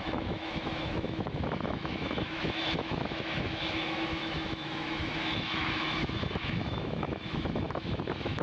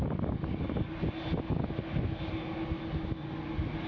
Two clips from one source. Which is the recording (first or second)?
second